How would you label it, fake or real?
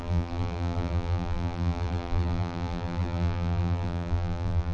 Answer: fake